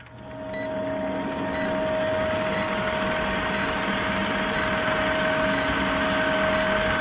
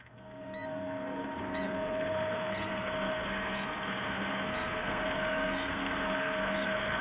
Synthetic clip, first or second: second